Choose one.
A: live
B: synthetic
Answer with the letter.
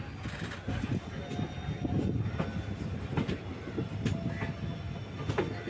A